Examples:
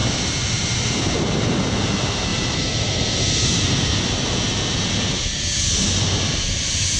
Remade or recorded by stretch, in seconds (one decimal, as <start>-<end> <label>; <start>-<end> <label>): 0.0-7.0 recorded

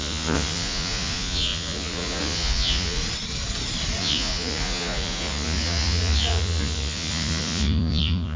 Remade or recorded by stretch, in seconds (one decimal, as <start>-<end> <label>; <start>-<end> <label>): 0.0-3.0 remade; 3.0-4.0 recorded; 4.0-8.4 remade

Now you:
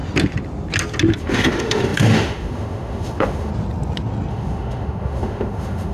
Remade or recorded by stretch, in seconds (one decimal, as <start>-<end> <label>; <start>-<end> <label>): 0.0-1.2 recorded; 1.2-3.5 remade; 3.5-4.3 recorded; 4.3-5.9 remade